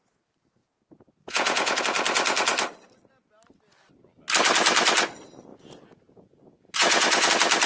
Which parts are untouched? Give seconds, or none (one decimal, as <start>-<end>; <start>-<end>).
0.0-0.6; 1.8-5.5; 7.3-7.7